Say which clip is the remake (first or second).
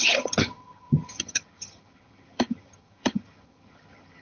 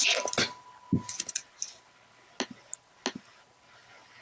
first